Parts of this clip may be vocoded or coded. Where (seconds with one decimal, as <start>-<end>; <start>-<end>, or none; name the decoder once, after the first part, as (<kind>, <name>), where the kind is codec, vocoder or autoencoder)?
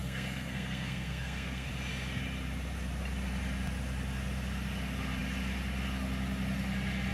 0.0-1.7 (codec, SNAC)